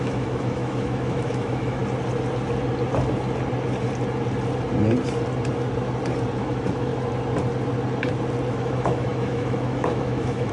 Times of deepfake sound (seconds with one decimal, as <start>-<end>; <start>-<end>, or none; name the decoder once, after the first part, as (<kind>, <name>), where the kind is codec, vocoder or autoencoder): 0.0-1.8 (autoencoder, DAC-VAE); 6.4-6.9; 8.5-10.5